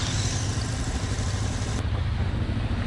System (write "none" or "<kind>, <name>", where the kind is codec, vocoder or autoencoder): none